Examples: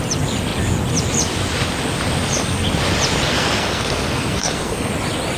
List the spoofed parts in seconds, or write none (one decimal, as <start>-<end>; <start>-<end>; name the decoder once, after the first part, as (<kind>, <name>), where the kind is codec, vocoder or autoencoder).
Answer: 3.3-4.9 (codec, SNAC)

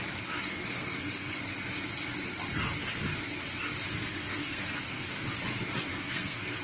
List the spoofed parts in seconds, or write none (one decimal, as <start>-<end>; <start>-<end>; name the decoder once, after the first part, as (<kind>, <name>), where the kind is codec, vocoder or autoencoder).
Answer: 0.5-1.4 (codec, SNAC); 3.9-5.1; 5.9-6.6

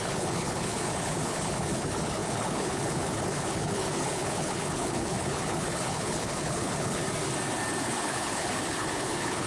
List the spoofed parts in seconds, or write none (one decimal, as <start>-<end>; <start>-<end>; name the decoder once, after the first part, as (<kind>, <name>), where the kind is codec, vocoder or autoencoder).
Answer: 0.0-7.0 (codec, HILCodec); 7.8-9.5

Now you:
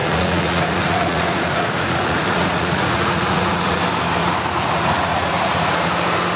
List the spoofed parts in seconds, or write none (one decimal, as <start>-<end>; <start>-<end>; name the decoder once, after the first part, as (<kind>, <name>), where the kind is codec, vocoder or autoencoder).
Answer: 0.0-3.8 (vocoder, Vocos); 4.2-5.8

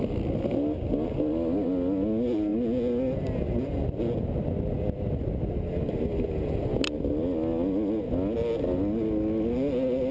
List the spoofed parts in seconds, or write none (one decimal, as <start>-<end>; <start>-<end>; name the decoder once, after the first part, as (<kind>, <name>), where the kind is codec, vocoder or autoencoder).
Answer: none